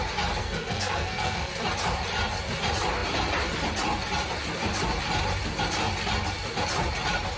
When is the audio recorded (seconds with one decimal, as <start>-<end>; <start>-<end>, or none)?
0.0-0.4; 1.5-7.4